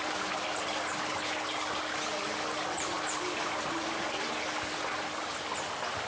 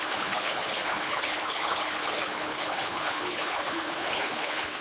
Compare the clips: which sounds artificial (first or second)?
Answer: second